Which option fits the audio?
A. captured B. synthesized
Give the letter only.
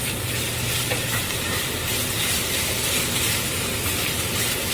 B